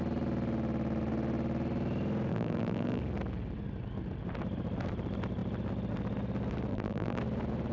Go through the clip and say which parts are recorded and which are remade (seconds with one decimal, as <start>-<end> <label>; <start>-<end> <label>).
0.0-2.3 recorded; 2.3-3.0 remade; 3.0-6.7 recorded; 6.7-7.2 remade; 7.2-7.7 recorded